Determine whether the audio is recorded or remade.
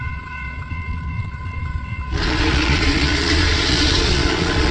remade